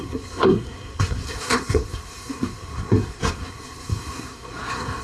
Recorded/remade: remade